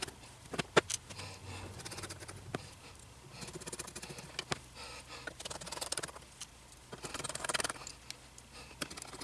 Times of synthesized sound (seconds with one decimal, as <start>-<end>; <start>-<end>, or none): 1.4-2.0